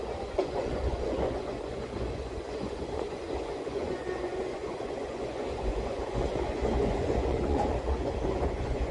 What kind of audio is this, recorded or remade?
remade